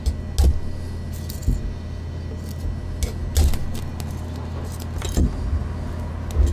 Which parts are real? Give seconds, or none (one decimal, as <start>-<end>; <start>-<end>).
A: 0.0-6.5